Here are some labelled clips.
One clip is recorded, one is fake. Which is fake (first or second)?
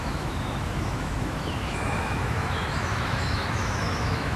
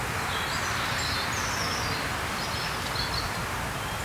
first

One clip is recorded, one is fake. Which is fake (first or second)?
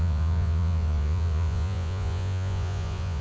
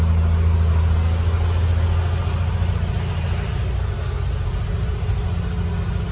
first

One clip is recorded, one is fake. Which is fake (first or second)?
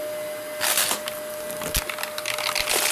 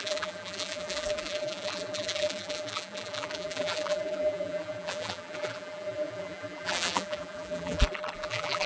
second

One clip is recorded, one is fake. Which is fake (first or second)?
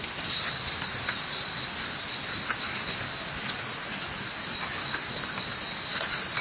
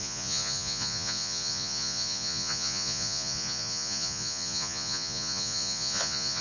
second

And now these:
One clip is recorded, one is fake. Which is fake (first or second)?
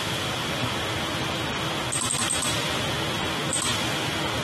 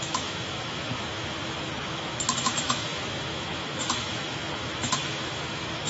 second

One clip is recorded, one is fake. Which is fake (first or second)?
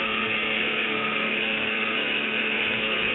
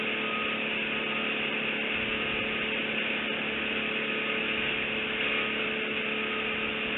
first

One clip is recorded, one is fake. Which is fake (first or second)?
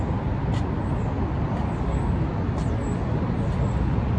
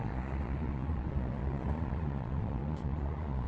second